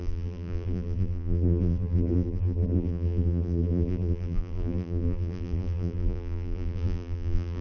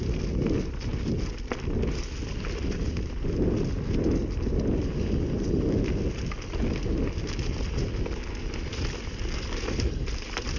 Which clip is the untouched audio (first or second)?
second